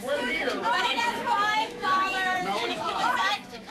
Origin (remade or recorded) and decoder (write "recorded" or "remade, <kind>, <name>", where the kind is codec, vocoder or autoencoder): remade, autoencoder, DAC-VAE